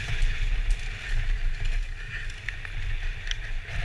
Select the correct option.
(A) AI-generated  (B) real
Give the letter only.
B